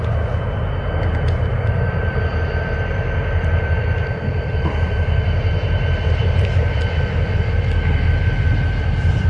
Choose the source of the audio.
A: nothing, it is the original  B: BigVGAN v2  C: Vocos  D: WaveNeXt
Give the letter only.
B